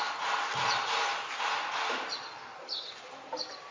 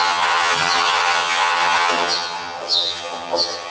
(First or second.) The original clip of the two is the first